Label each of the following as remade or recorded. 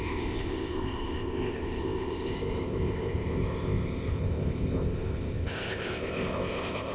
remade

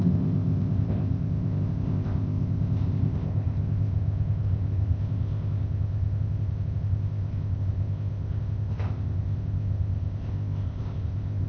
remade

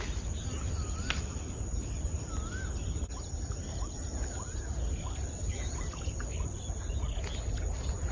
recorded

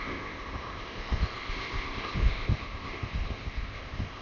remade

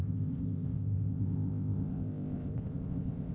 remade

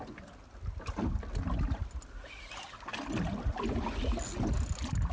recorded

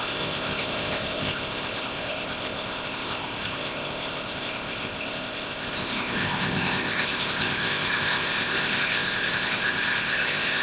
remade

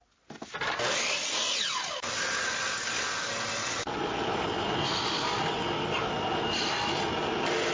recorded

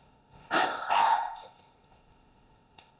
remade